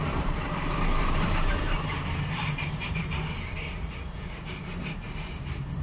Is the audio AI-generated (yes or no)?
yes